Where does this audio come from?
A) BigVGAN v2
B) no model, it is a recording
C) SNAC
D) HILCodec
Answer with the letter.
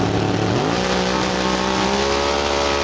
B